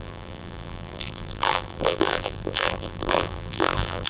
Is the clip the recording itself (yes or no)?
no